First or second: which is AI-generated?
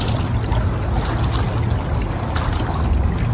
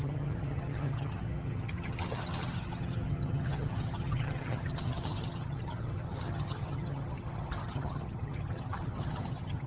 second